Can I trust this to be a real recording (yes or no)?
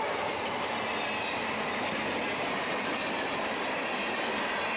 yes